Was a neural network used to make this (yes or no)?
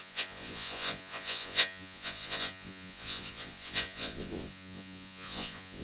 yes